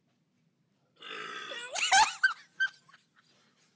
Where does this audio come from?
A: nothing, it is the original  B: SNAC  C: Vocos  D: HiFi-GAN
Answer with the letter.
A